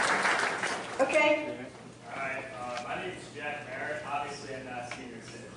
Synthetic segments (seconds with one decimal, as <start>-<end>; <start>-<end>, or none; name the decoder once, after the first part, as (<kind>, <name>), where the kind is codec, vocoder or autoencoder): none